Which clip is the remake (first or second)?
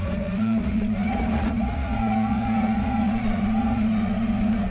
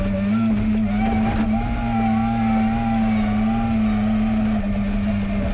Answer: first